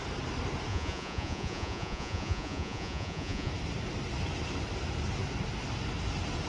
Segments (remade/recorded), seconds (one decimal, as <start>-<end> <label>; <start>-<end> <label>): 0.0-0.7 recorded; 0.7-3.5 remade; 3.5-6.5 recorded